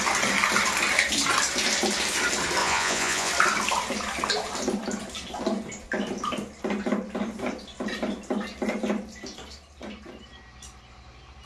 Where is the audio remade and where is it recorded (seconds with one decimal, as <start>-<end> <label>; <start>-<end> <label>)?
0.0-2.6 recorded; 2.6-3.3 remade; 3.3-11.5 recorded